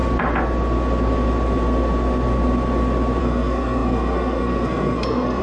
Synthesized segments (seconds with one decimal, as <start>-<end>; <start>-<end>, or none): 3.2-5.4